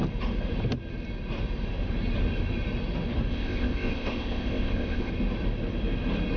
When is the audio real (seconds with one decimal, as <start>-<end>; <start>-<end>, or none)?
0.0-3.3; 5.1-6.4

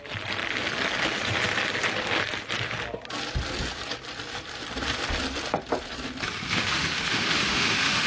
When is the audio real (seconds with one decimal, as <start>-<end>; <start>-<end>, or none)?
0.0-6.5